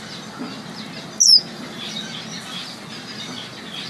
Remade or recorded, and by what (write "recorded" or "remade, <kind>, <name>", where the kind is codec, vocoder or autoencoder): recorded